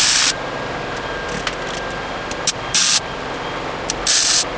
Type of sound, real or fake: real